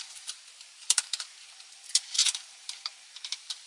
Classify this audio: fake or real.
fake